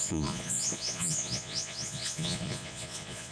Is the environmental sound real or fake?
fake